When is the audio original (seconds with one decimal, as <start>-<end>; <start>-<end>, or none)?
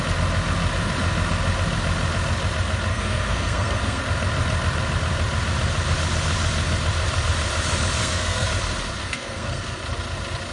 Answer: 0.0-2.9; 4.0-8.0; 8.5-9.0; 9.8-10.5